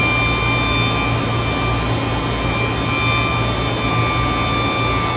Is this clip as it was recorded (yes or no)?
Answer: yes